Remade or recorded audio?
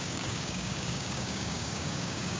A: remade